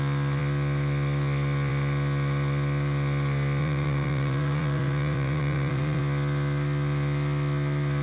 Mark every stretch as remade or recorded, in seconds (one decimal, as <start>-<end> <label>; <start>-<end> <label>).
0.0-3.6 recorded; 3.6-6.0 remade; 6.0-8.0 recorded